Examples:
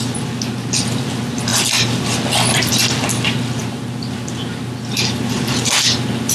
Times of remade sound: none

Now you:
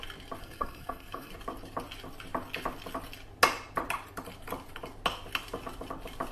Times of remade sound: 0.4-1.3 (codec, SNAC)

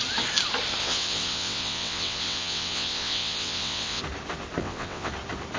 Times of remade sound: 0.8-4.0 (vocoder, WaveNeXt); 4.6-5.1

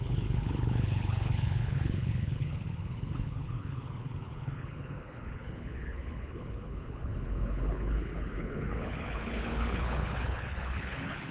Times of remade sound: 0.0-11.3 (codec, HILCodec)

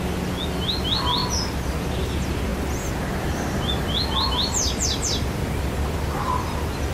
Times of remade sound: none

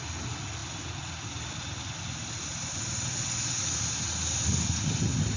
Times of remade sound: none

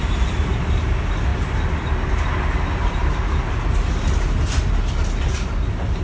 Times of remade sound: none

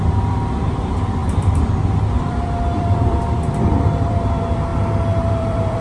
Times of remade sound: 0.0-4.7 (vocoder, BigVGAN v2); 5.3-5.8